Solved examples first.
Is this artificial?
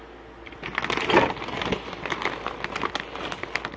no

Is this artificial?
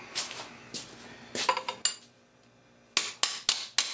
no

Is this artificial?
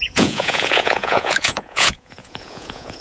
yes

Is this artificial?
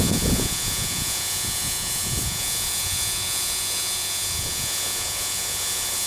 yes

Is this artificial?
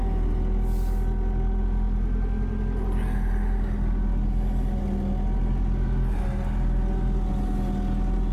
no